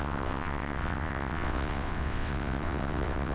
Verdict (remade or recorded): remade